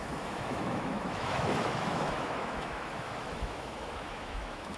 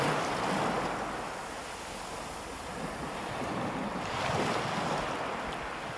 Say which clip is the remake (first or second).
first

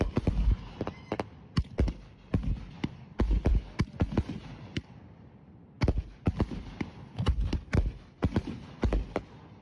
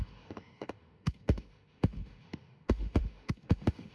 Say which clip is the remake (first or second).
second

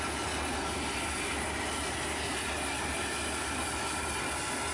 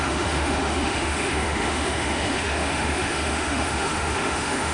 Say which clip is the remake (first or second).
second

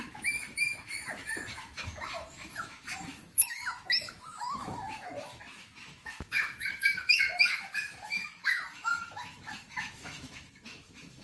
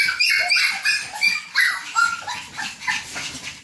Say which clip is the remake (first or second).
first